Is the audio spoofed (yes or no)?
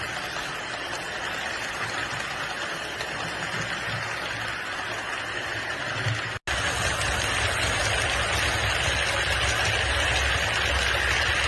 no